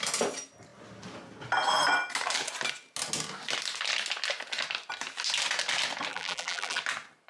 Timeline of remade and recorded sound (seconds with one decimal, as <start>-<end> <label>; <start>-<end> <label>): 0.0-6.1 recorded; 6.1-6.8 remade; 6.8-7.3 recorded